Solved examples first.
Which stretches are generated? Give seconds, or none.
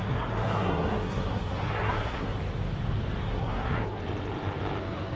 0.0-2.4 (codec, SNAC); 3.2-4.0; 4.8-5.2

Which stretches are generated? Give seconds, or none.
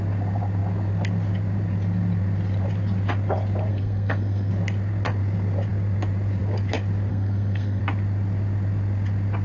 3.7-4.5 (codec, SNAC); 7.1-7.8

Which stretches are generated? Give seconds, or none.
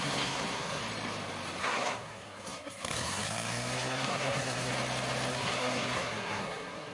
0.0-0.8 (codec, SNAC); 1.6-4.7; 5.3-6.9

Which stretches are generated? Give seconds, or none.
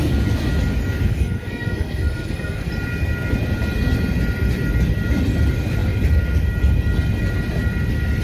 1.1-2.7 (codec, SNAC)